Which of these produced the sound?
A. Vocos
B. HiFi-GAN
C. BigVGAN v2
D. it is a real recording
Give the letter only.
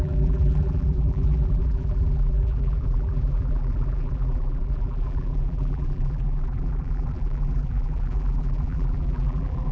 C